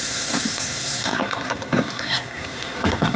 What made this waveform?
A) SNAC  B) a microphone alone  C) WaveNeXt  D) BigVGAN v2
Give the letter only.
A